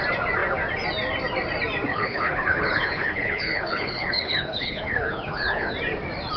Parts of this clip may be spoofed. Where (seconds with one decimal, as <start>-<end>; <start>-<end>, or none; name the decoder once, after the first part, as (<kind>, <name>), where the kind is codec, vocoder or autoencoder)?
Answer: 1.9-5.7 (codec, HILCodec)